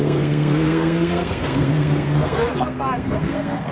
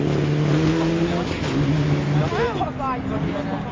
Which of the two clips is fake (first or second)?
first